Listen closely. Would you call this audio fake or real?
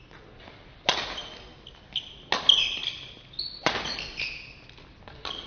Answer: real